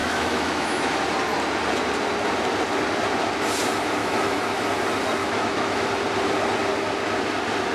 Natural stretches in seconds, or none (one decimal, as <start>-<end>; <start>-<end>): 0.9-4.0; 4.6-5.2; 5.9-7.7

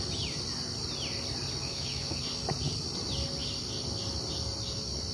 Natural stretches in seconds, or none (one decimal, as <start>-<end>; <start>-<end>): 0.0-1.6; 2.2-5.1

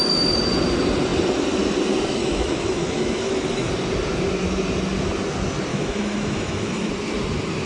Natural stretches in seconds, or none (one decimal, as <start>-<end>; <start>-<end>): 0.0-2.2; 3.7-5.7; 6.9-7.7

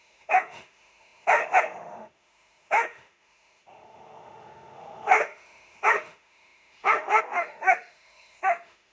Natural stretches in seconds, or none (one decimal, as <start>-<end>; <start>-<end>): none

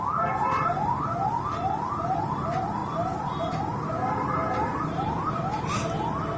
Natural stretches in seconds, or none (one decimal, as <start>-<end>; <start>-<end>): 0.0-6.4

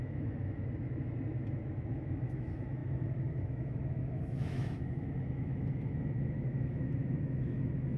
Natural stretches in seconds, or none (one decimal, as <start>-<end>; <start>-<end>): 0.6-1.9

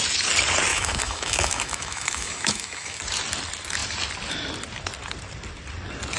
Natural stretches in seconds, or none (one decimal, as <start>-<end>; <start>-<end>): 0.0-0.7; 3.0-6.2

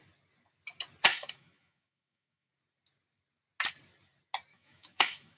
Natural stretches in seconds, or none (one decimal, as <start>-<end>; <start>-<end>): 0.0-1.1; 2.5-4.5